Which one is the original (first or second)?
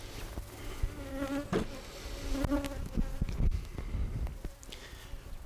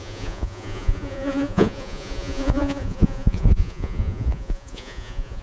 first